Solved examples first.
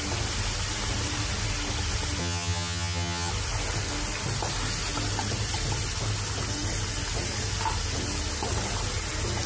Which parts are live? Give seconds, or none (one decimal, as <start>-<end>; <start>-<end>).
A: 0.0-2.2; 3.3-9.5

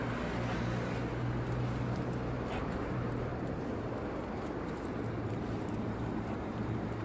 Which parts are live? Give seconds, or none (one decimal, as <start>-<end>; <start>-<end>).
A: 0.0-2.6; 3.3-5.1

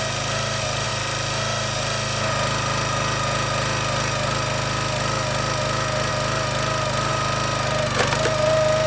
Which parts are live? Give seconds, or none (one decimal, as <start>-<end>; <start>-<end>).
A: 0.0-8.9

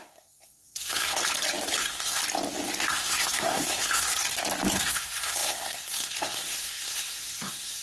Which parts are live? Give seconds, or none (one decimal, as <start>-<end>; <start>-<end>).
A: 1.2-1.8; 2.2-2.9; 4.1-4.8

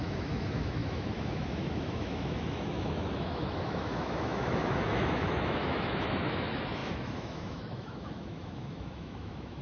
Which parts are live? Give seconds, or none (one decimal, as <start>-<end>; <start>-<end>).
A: none

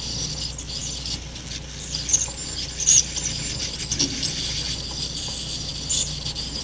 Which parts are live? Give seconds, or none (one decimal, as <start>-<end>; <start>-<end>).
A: 0.0-6.6